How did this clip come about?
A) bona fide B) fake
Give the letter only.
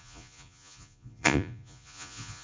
B